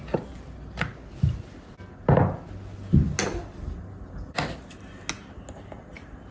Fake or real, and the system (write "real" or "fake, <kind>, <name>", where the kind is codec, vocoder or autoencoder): real